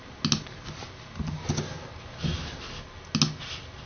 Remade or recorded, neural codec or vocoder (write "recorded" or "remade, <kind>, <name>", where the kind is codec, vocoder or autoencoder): recorded